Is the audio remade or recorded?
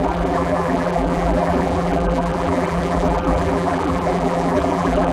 remade